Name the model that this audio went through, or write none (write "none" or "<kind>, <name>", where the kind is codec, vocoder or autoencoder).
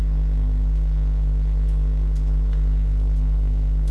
codec, SNAC